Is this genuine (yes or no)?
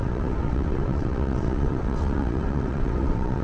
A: no